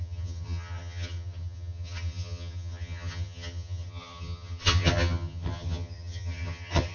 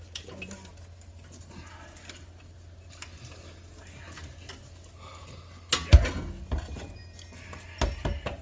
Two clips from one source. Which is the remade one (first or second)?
first